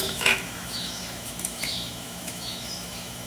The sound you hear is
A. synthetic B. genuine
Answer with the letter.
A